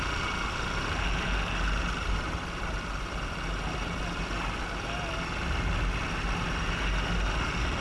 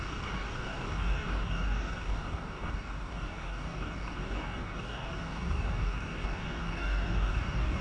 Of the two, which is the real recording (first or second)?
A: first